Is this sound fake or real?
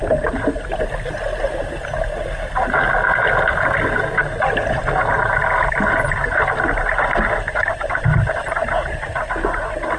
real